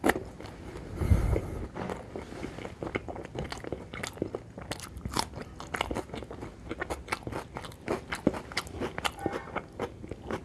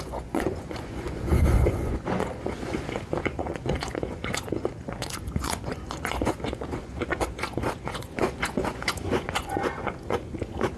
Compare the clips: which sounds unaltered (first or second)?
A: first